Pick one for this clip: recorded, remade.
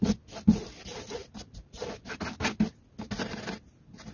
recorded